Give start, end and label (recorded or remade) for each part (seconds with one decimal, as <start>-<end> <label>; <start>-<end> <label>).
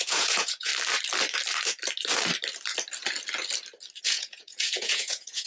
0.0-0.7 remade; 0.7-4.0 recorded; 4.0-5.5 remade